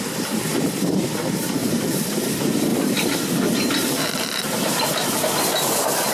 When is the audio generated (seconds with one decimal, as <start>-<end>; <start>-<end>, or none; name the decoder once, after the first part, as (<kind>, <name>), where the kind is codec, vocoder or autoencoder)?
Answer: 1.6-2.3 (vocoder, BigVGAN v2); 2.7-5.2